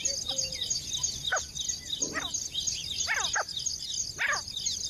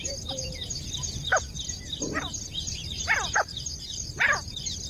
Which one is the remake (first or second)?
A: second